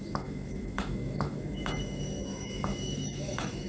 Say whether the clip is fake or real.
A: fake